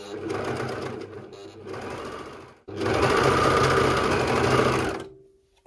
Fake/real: real